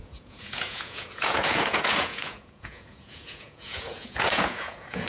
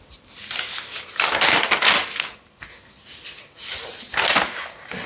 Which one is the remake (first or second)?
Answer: first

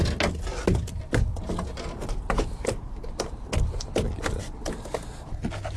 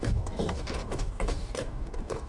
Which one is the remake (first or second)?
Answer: second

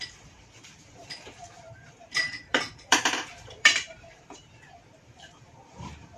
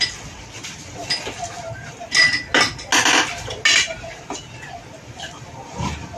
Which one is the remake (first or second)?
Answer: first